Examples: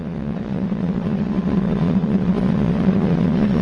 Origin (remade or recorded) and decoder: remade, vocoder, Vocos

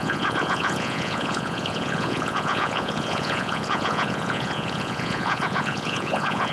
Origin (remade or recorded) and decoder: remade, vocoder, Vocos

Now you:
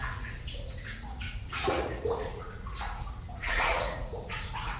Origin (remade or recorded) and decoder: remade, vocoder, Vocos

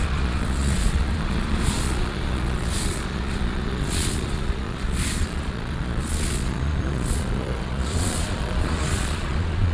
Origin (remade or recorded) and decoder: remade, vocoder, Vocos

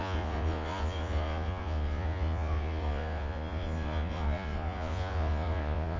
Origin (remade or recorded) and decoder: remade, vocoder, Vocos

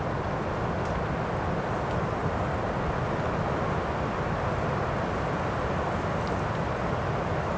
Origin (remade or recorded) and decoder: recorded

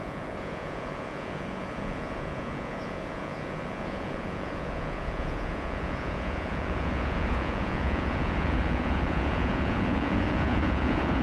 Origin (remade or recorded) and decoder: remade, vocoder, Vocos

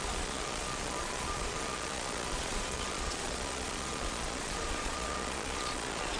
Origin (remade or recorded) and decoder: remade, vocoder, Vocos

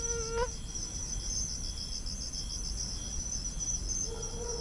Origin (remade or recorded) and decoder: recorded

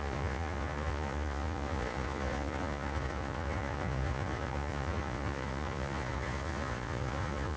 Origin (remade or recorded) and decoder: remade, vocoder, Vocos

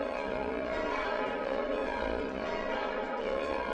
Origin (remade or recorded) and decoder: remade, vocoder, Vocos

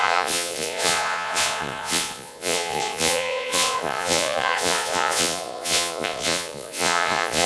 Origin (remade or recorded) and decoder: remade, vocoder, Vocos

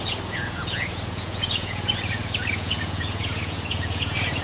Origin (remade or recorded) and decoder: remade, vocoder, Vocos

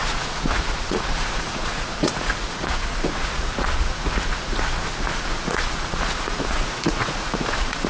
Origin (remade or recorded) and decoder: remade, vocoder, Vocos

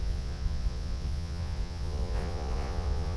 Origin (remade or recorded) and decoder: remade, vocoder, Vocos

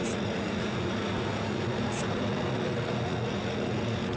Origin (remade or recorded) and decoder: remade, vocoder, Vocos